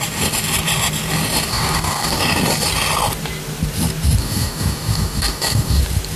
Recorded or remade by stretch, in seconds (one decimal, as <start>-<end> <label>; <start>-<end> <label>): 0.0-1.5 recorded; 1.5-2.2 remade; 2.2-4.2 recorded; 4.2-5.8 remade; 5.8-6.2 recorded